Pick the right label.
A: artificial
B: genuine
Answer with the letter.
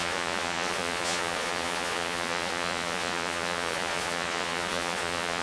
A